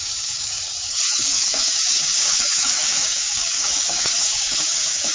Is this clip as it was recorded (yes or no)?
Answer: no